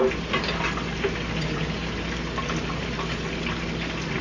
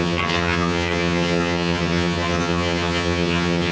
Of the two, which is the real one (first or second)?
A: first